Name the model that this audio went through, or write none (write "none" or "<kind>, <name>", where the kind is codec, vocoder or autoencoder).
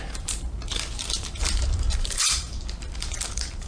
vocoder, BigVGAN v2